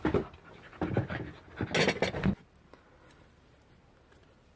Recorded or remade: recorded